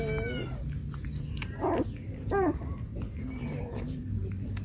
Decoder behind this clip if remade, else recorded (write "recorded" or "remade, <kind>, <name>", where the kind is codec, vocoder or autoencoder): recorded